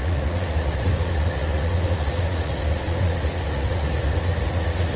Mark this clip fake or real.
fake